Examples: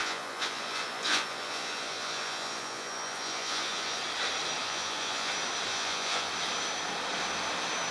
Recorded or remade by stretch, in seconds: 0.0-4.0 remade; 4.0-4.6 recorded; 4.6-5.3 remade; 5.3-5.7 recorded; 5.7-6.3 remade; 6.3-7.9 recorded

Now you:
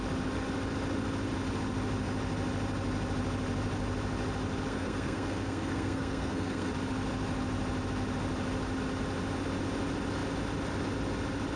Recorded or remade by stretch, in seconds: 0.0-4.7 recorded; 4.7-6.7 remade; 6.7-11.6 recorded

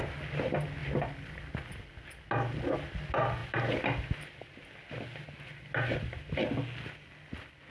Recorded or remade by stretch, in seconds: 0.0-7.7 recorded

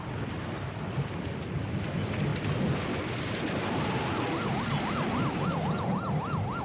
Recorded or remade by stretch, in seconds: 0.0-6.6 recorded

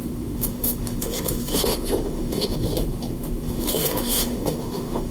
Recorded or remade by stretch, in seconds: 0.0-5.1 remade

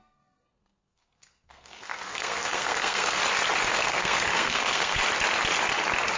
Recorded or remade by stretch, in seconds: 0.0-3.2 remade; 3.2-3.7 recorded; 3.7-5.0 remade; 5.0-6.2 recorded

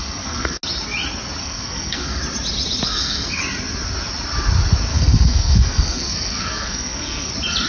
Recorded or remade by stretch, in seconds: 0.0-0.6 remade; 0.6-1.4 recorded; 1.4-2.2 remade; 2.2-2.9 recorded; 2.9-3.4 remade; 3.4-4.9 recorded; 4.9-7.3 remade; 7.3-7.7 recorded

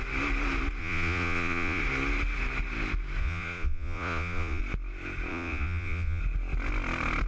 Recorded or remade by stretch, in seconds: 0.0-0.8 recorded; 0.8-1.8 remade; 1.8-3.2 recorded; 3.2-4.6 remade; 4.6-5.3 recorded; 5.3-6.2 remade; 6.2-7.3 recorded